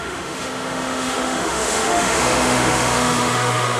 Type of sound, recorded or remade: remade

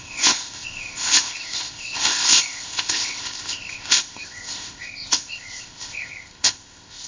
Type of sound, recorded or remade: remade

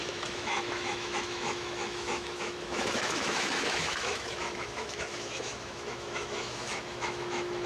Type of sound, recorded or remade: remade